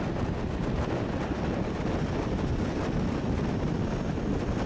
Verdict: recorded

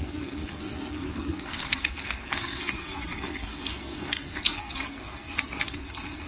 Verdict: remade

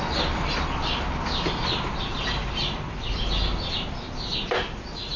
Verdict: recorded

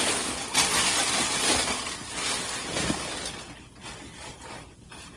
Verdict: recorded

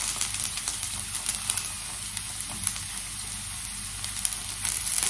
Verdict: recorded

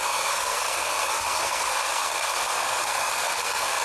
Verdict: remade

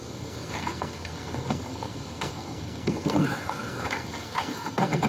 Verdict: remade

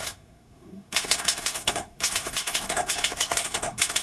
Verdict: remade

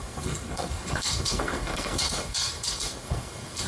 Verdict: remade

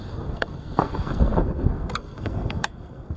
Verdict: remade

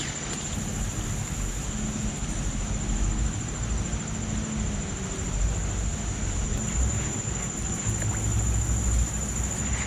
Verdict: recorded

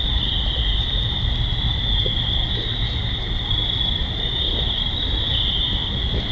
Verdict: recorded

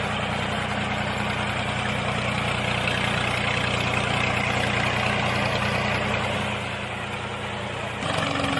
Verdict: recorded